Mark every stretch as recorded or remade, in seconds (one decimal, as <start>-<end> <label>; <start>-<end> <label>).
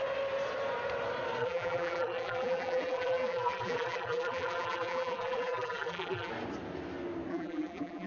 0.0-1.4 recorded; 1.4-6.3 remade; 6.3-7.3 recorded; 7.3-8.1 remade